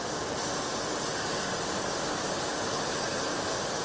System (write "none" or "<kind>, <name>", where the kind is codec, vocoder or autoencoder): none